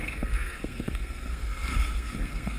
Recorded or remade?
remade